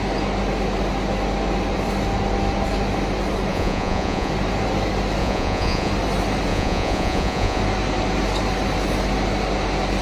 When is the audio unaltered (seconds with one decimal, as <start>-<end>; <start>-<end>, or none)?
0.0-3.5; 4.3-5.2; 5.9-6.5; 7.6-10.0